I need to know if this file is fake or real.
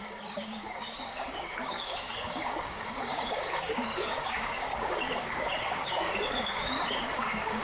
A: fake